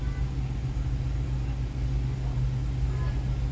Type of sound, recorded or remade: recorded